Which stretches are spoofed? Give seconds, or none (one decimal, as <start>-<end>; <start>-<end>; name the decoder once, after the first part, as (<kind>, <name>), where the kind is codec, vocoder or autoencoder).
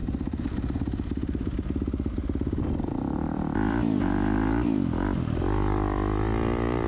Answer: 2.6-6.9 (vocoder, BigVGAN v2)